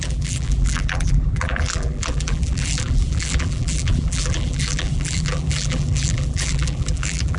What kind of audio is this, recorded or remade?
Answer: remade